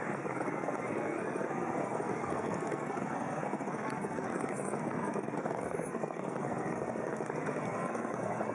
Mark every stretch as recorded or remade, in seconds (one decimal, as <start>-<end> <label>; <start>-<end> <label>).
0.0-8.5 remade